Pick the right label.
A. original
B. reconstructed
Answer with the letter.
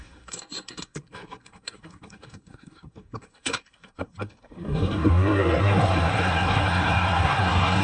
B